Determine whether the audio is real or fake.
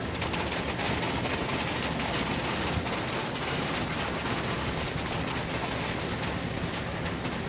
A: real